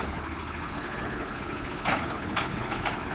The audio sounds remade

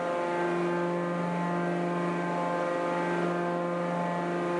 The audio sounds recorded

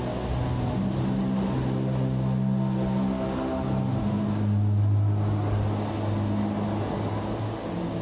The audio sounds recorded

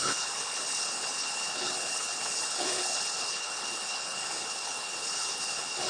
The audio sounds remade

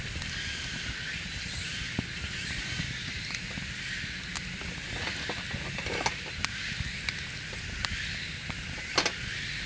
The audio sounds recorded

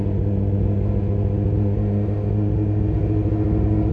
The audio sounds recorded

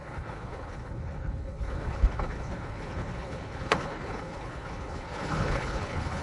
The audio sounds remade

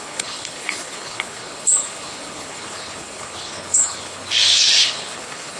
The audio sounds remade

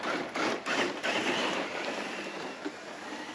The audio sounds recorded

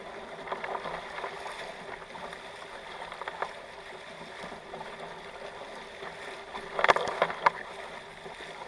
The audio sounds recorded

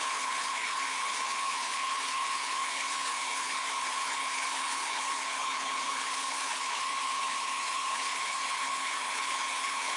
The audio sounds remade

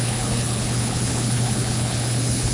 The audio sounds remade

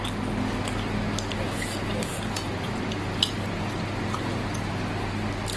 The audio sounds recorded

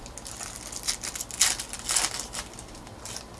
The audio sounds recorded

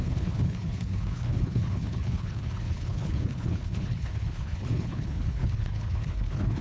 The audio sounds remade